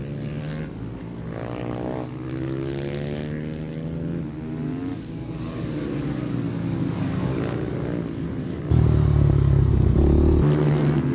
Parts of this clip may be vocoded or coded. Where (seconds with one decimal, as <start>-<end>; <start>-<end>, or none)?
4.9-9.7